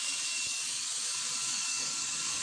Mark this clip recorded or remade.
remade